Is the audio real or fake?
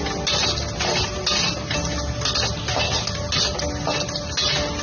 real